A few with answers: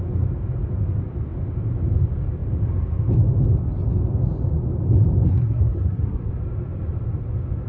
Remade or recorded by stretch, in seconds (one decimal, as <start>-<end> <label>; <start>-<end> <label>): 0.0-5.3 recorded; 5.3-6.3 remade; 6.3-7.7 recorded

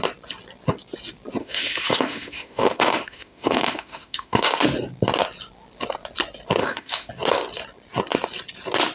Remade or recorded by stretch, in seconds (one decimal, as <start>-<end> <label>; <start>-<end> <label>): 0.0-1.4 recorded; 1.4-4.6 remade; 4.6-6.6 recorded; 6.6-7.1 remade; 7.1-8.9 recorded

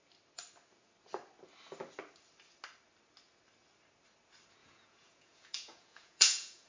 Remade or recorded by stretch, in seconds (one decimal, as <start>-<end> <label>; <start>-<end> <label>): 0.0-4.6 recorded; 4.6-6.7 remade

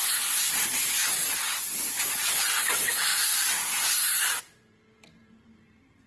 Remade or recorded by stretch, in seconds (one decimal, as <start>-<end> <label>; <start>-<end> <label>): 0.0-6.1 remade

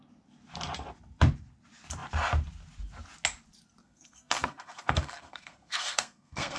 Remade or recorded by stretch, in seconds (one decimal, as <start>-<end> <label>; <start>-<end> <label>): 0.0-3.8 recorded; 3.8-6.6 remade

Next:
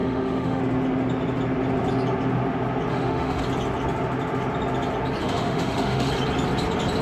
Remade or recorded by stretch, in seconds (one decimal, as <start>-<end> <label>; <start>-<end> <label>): 0.0-0.6 remade; 0.6-2.9 recorded; 2.9-3.4 remade; 3.4-5.2 recorded; 5.2-6.1 remade; 6.1-7.0 recorded

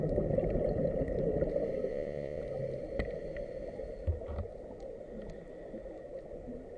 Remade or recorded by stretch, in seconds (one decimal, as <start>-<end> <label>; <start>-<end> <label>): 0.0-1.9 recorded; 1.9-2.4 remade; 2.4-6.8 recorded

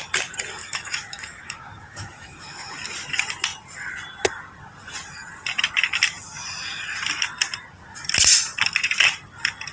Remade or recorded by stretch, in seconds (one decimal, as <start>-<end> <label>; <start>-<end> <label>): 0.0-0.6 recorded; 0.6-2.7 remade; 2.7-9.7 recorded